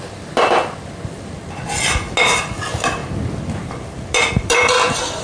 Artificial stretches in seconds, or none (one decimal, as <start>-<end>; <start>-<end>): none